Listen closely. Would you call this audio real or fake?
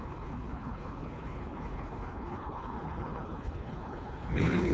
fake